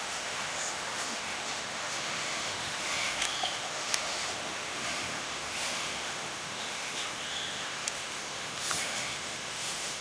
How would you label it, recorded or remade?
remade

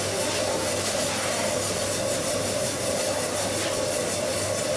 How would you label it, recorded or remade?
recorded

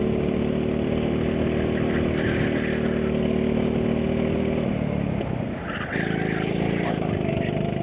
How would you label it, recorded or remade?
recorded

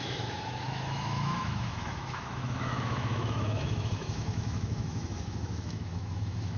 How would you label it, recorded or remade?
remade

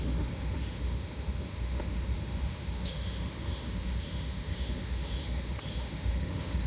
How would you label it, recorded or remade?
remade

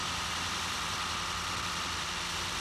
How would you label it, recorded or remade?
recorded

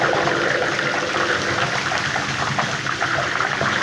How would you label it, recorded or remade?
recorded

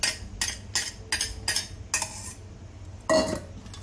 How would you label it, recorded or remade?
recorded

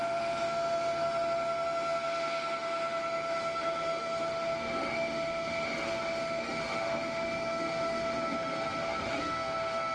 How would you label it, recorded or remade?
remade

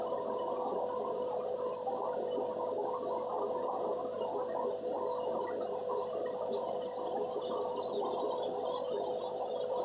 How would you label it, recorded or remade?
recorded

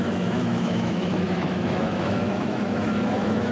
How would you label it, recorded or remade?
remade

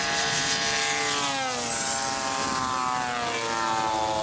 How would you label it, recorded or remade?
recorded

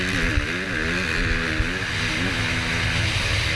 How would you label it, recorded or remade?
recorded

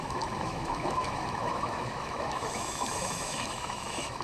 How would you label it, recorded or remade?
remade